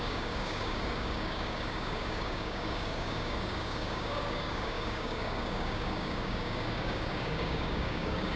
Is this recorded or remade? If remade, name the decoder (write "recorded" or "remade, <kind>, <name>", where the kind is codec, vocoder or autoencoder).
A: remade, codec, DAC